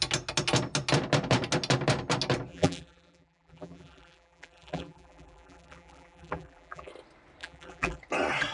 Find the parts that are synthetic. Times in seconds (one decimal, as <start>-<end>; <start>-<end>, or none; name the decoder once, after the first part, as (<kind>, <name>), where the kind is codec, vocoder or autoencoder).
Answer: 2.5-6.9 (vocoder, BigVGAN v2); 7.4-8.0